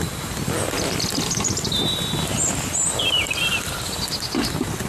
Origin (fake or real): fake